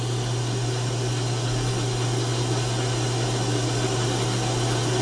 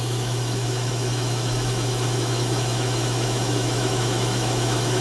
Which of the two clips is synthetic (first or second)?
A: second